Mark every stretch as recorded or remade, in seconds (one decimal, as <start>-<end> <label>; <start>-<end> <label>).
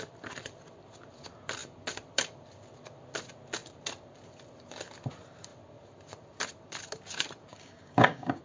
0.0-7.5 recorded; 7.5-8.4 remade